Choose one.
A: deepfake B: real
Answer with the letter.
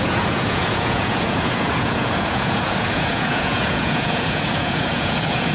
A